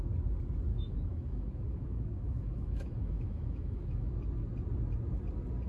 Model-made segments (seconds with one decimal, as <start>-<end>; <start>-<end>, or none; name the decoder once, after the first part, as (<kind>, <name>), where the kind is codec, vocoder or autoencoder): 0.7-4.1 (autoencoder, DAC-VAE)